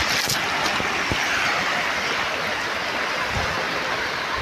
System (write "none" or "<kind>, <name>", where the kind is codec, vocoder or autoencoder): none